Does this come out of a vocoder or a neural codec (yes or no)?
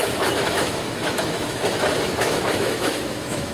yes